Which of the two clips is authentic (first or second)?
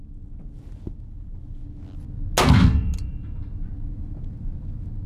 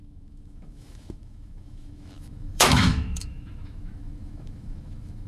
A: first